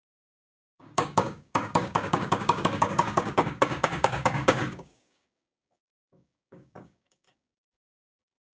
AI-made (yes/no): yes